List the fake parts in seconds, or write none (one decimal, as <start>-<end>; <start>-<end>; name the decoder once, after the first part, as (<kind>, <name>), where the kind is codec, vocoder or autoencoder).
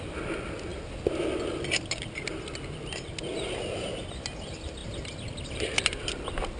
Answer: none